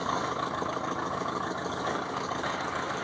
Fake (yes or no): yes